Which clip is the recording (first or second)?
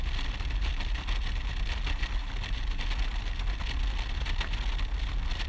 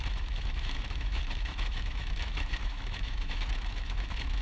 first